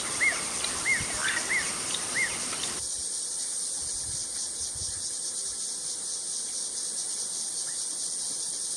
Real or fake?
real